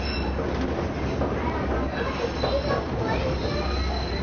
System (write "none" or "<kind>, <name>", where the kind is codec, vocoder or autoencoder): none